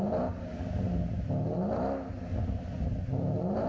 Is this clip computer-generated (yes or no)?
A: no